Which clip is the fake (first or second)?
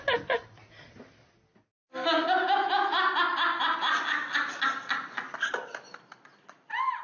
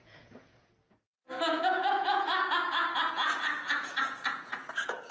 second